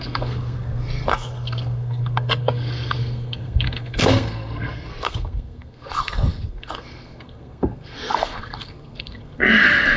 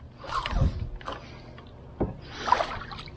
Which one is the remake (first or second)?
first